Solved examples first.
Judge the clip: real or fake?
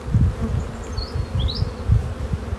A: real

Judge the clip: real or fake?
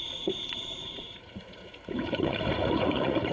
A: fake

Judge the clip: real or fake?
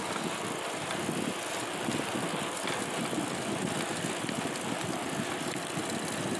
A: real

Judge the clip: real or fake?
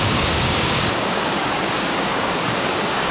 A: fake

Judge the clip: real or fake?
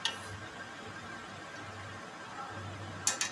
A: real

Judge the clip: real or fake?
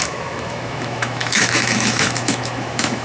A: fake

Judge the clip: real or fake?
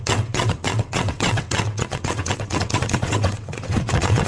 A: fake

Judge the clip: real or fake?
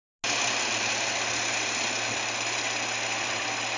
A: real